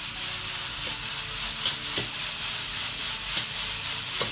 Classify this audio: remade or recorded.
recorded